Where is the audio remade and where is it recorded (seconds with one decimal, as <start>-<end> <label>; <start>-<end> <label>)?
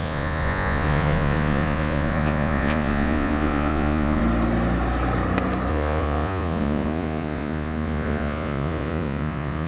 0.0-4.2 remade; 4.2-5.7 recorded; 5.7-9.7 remade